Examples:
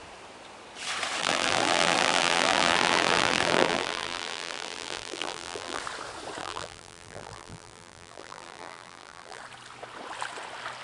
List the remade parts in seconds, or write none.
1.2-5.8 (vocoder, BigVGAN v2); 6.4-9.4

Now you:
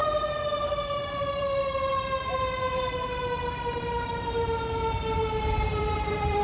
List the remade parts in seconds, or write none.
0.0-6.4 (vocoder, BigVGAN v2)

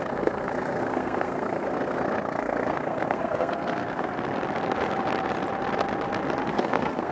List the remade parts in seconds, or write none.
0.0-4.1 (codec, SNAC); 6.5-7.1

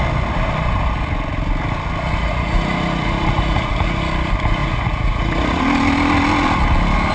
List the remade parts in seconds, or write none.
2.2-4.0 (vocoder, Vocos); 4.6-5.6